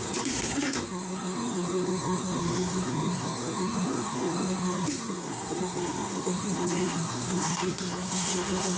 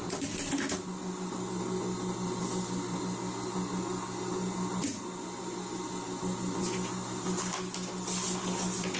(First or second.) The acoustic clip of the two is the second